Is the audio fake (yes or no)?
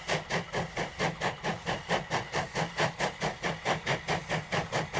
no